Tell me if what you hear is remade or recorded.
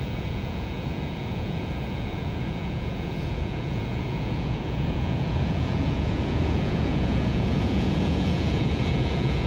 remade